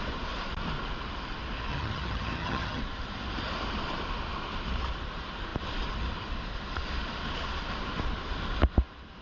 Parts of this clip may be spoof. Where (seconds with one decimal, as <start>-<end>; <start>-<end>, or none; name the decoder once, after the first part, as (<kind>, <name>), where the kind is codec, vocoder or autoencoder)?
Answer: 1.7-2.8 (vocoder, HiFi-GAN)